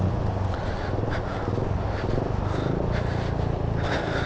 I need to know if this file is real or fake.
real